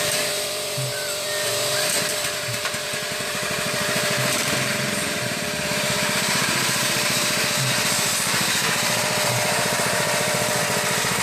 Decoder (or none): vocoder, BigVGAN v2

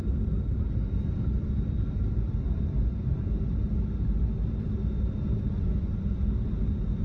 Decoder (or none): vocoder, BigVGAN v2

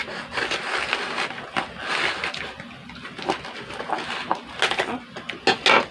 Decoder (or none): none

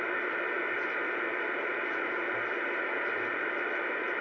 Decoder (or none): none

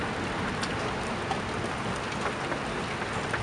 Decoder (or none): none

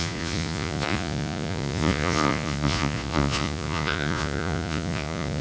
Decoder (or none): vocoder, Vocos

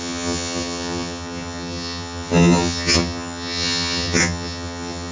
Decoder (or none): vocoder, HiFi-GAN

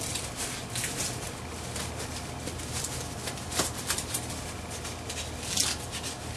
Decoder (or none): none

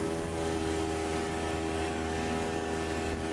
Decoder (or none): codec, DAC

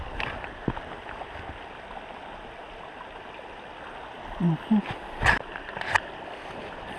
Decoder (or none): none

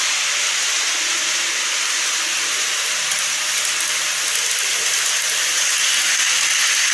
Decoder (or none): none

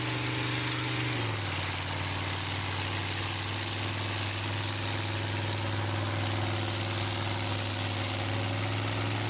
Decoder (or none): none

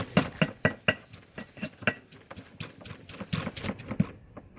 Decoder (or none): none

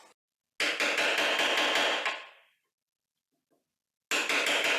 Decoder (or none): none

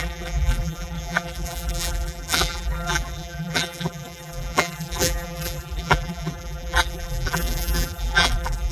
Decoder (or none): vocoder, BigVGAN v2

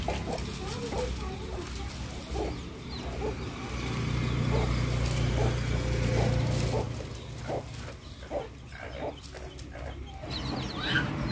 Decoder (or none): none